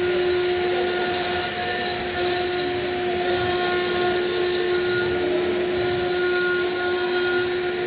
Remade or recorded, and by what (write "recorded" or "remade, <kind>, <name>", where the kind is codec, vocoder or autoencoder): recorded